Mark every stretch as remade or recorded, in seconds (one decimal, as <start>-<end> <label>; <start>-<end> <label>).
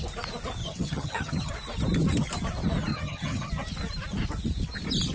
0.0-0.6 recorded; 0.6-1.5 remade; 1.5-2.9 recorded; 2.9-3.5 remade; 3.5-5.1 recorded